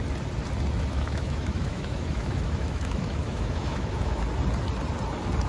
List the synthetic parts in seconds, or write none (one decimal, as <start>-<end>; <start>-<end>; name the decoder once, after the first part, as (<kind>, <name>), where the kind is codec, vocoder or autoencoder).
0.9-4.2 (autoencoder, DAC-VAE)